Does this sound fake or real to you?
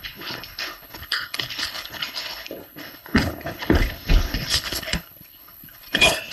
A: fake